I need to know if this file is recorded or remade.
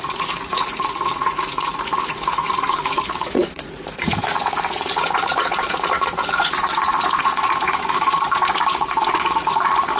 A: remade